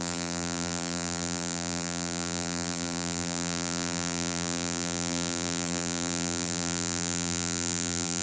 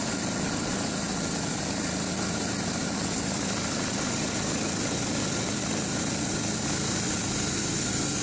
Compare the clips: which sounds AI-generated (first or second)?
first